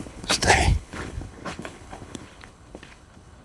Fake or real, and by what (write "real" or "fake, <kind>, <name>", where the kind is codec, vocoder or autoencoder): fake, codec, HILCodec